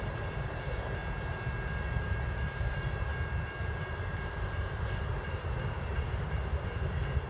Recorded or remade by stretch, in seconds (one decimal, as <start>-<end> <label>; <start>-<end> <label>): 0.0-1.0 remade; 1.0-1.8 recorded; 1.8-3.1 remade; 3.1-3.7 recorded; 3.7-7.3 remade